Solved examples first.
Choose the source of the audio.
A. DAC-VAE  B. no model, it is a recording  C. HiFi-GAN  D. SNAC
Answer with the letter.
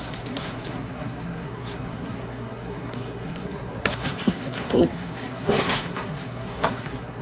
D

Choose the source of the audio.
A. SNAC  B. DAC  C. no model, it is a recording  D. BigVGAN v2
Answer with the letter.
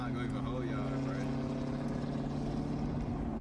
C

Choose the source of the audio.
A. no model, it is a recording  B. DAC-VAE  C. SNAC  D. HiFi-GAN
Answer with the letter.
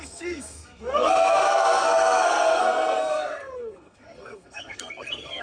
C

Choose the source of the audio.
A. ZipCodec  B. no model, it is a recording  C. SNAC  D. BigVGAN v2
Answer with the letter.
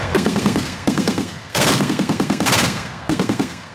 C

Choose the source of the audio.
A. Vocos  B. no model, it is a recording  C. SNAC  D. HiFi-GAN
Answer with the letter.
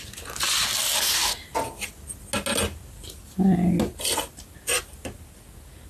B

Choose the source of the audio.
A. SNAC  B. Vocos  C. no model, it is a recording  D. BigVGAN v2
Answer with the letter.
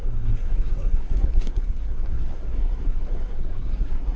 A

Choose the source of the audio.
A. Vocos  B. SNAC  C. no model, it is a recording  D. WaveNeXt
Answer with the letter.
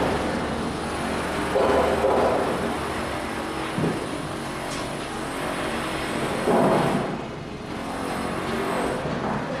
C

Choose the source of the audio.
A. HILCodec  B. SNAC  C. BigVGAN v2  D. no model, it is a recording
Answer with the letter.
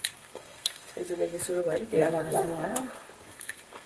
B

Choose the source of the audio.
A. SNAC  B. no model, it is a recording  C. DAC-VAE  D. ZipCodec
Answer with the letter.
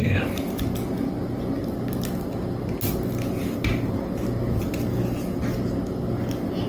B